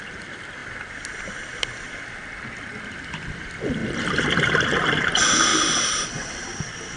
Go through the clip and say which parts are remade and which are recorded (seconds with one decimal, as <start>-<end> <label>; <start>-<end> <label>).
0.0-5.5 recorded; 5.5-6.0 remade; 6.0-7.0 recorded